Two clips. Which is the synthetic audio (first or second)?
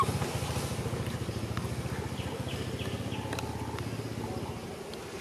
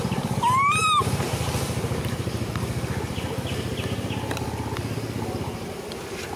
second